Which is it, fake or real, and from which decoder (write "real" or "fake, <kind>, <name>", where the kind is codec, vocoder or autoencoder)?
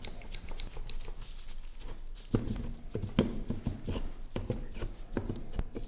real